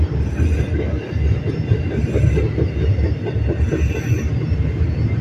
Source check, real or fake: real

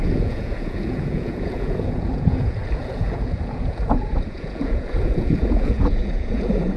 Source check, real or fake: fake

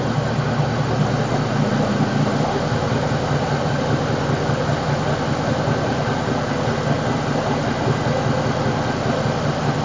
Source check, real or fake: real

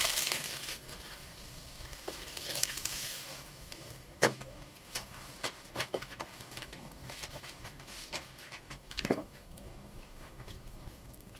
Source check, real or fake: fake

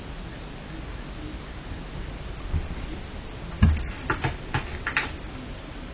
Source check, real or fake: real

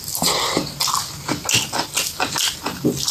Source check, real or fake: real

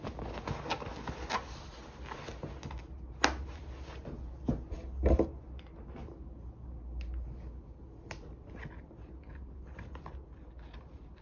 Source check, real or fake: real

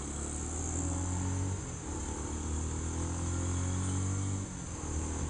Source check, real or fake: real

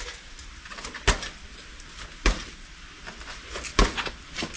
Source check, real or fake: real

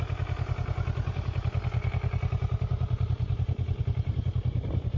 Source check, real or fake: real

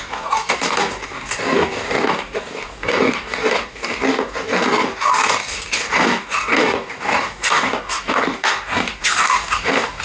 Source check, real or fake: fake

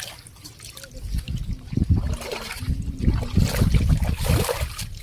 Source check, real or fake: real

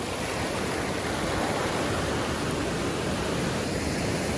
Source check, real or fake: real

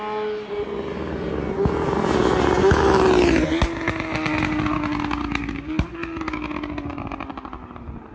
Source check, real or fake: real